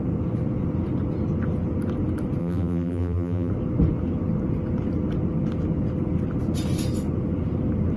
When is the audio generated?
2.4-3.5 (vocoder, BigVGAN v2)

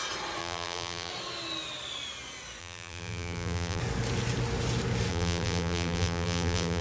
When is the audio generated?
0.4-1.1 (vocoder, BigVGAN v2); 2.6-3.8; 5.1-6.8

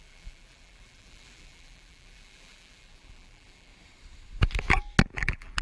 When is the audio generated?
0.0-3.7 (vocoder, BigVGAN v2); 5.1-5.6